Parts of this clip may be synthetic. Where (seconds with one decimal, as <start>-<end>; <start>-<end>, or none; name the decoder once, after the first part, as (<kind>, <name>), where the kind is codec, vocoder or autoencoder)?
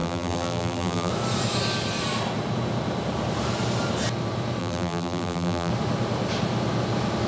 0.0-1.1 (vocoder, BigVGAN v2); 4.6-5.7